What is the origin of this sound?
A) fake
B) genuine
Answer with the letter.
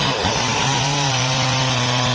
A